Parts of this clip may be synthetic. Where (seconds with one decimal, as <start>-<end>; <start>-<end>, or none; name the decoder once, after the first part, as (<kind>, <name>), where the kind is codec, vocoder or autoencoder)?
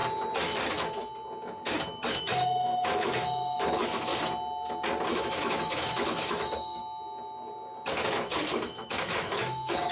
2.1-4.1 (autoencoder, DAC-VAE); 5.1-6.8; 8.1-9.9